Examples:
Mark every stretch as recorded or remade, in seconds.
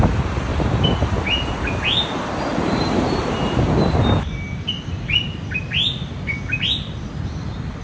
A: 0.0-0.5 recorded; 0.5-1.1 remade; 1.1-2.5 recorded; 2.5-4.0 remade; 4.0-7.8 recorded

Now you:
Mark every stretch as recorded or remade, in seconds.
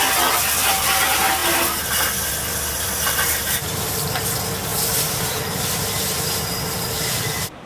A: 0.0-4.7 recorded; 4.7-5.5 remade; 5.5-7.7 recorded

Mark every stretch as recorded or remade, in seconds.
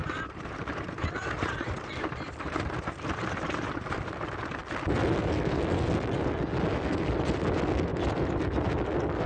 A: 0.0-4.1 remade; 4.1-7.9 recorded; 7.9-8.4 remade; 8.4-9.3 recorded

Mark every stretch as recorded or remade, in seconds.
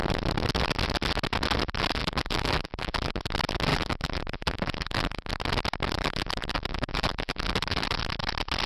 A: 0.0-2.0 recorded; 2.0-3.1 remade; 3.1-3.7 recorded; 3.7-5.3 remade; 5.3-6.0 recorded; 6.0-8.0 remade; 8.0-8.7 recorded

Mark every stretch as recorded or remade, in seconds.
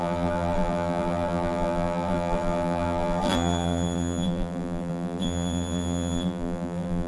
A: 0.0-7.1 remade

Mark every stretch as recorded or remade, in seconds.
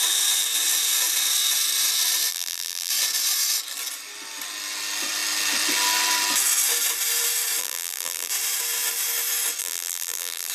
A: 0.0-2.3 recorded; 2.3-2.9 remade; 2.9-7.6 recorded; 7.6-8.3 remade; 8.3-9.6 recorded; 9.6-10.5 remade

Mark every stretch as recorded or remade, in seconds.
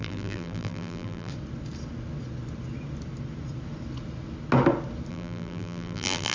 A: 0.0-1.3 remade; 1.3-5.1 recorded; 5.1-6.3 remade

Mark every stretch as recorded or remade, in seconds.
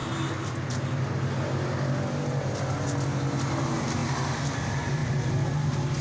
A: 0.0-3.6 recorded; 3.6-4.0 remade; 4.0-4.6 recorded; 4.6-5.0 remade; 5.0-6.0 recorded